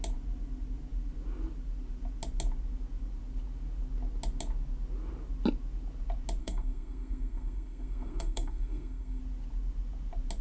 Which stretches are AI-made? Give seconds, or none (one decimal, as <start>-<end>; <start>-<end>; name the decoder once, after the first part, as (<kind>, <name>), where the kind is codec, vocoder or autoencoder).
6.4-9.2 (codec, SNAC)